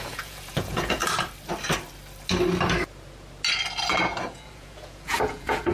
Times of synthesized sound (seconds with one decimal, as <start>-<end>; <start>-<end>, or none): 0.0-1.0; 4.2-5.7